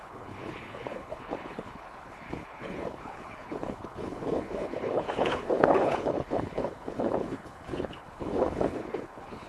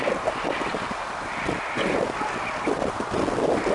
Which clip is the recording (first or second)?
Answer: second